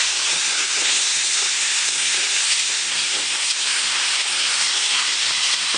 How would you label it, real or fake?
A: fake